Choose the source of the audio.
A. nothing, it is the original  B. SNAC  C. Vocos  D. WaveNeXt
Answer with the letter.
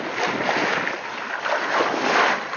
A